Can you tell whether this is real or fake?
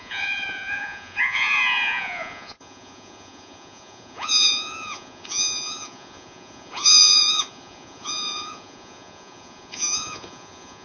fake